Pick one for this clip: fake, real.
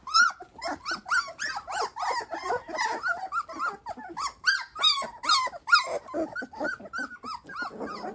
real